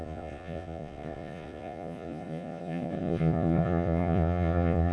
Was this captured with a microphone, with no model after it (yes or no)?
no